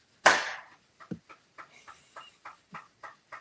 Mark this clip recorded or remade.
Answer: recorded